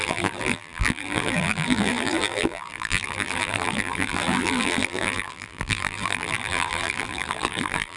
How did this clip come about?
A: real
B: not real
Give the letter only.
B